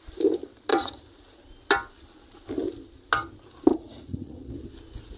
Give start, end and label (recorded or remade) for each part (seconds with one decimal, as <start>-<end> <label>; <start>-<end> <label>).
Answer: 0.0-0.7 recorded; 0.7-1.4 remade; 1.4-3.7 recorded; 3.7-4.5 remade; 4.5-5.2 recorded

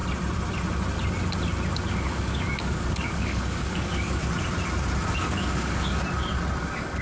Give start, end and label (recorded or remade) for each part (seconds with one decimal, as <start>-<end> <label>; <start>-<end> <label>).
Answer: 0.0-1.9 recorded; 1.9-4.2 remade; 4.2-5.1 recorded; 5.1-6.0 remade; 6.0-6.6 recorded; 6.6-7.0 remade

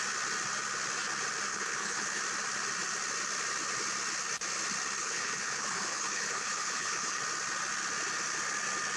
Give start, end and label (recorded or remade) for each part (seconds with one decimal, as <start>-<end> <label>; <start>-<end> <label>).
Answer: 0.0-1.5 recorded; 1.5-2.2 remade; 2.2-5.0 recorded; 5.0-7.2 remade; 7.2-9.0 recorded

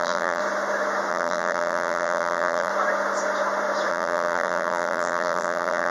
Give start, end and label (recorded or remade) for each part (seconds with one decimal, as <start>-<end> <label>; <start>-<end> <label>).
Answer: 0.0-0.4 remade; 0.4-1.1 recorded; 1.1-2.7 remade; 2.7-3.9 recorded; 3.9-5.9 remade

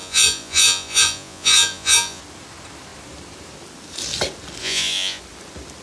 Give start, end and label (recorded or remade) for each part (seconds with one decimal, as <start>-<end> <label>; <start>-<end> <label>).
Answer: 0.0-2.2 remade; 2.2-4.6 recorded; 4.6-5.2 remade; 5.2-5.8 recorded

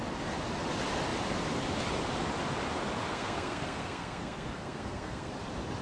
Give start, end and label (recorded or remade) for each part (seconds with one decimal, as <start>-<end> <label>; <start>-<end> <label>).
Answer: 0.0-3.1 recorded; 3.1-5.3 remade; 5.3-5.8 recorded